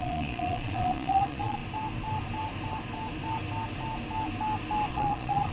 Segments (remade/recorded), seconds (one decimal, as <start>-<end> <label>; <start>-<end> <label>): 0.0-1.6 remade; 1.6-4.9 recorded; 4.9-5.5 remade